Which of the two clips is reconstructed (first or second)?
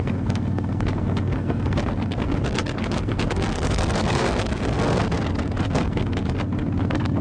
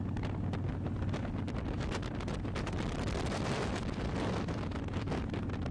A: first